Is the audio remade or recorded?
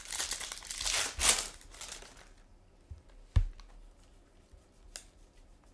recorded